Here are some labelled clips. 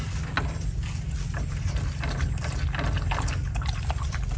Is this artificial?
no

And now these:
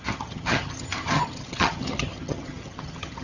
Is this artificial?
yes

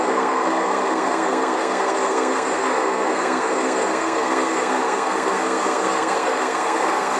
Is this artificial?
yes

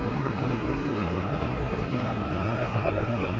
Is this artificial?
yes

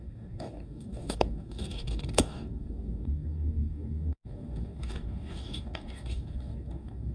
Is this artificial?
yes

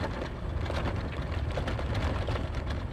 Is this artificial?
no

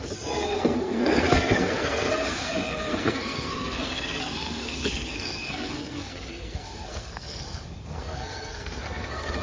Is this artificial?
yes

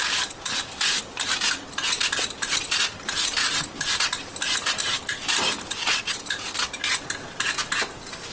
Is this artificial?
no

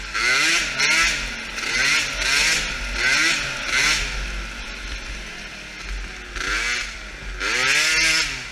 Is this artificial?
no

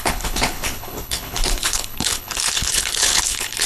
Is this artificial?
yes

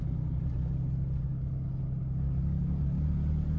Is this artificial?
no